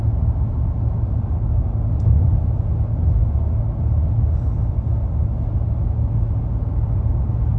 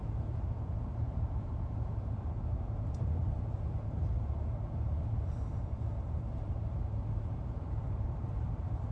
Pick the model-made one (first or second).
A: second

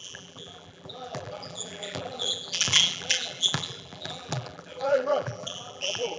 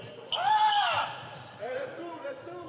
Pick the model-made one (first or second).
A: first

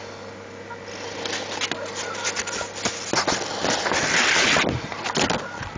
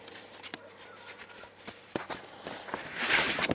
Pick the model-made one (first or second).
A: second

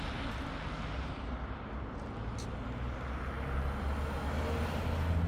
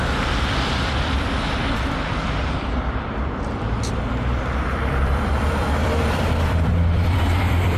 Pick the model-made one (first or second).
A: second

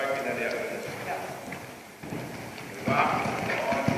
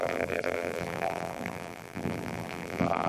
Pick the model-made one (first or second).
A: second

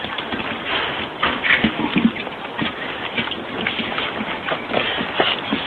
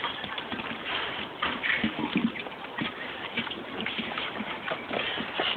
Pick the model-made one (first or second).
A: second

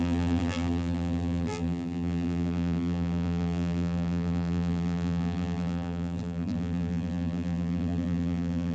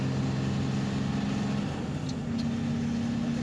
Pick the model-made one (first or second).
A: first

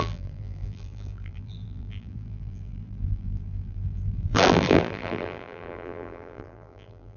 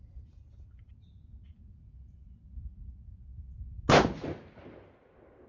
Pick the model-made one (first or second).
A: first